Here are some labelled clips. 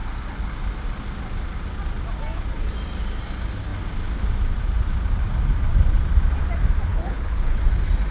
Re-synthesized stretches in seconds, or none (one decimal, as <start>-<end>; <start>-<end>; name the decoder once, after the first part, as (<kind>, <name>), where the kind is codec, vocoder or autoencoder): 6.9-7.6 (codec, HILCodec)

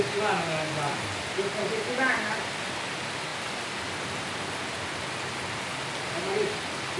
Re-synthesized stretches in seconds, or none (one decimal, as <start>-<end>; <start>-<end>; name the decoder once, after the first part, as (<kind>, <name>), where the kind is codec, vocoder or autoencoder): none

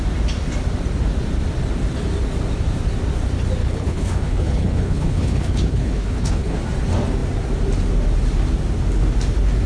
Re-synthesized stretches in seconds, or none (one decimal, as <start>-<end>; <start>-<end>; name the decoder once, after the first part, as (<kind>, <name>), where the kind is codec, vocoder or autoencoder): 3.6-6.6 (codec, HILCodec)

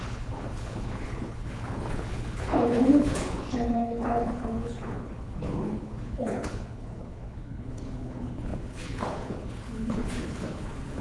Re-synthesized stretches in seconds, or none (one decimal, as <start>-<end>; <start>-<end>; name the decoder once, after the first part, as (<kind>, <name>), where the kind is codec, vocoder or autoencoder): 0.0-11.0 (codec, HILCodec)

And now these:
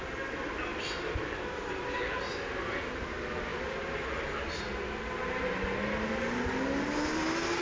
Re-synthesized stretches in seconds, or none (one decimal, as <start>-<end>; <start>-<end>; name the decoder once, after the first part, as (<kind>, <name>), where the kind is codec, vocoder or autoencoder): none

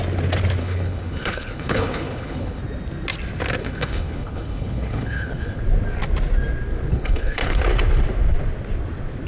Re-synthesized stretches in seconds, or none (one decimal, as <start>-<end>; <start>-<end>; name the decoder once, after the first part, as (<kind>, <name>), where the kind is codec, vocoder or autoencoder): 0.6-2.6 (codec, HILCodec); 3.6-5.6; 6.9-7.6

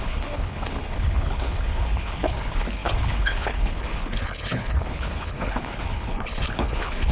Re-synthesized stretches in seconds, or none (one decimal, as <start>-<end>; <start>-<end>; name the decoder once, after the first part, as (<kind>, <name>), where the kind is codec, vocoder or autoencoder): 0.0-7.1 (codec, HILCodec)

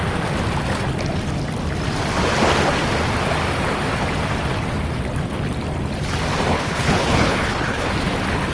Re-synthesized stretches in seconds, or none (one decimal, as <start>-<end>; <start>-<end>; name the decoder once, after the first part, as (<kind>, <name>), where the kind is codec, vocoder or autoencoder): 6.5-7.9 (codec, HILCodec)